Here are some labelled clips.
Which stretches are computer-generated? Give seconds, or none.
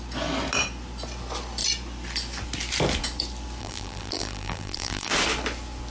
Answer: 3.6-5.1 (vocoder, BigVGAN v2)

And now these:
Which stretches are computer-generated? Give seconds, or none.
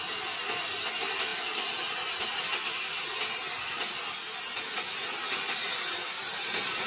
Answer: none